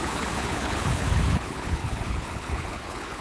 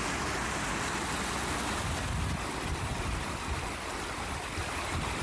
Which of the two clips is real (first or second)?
second